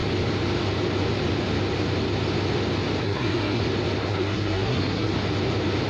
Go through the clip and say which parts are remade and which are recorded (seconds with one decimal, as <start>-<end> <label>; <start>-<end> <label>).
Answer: 0.0-3.0 recorded; 3.0-3.6 remade; 3.6-4.0 recorded; 4.0-5.1 remade; 5.1-5.9 recorded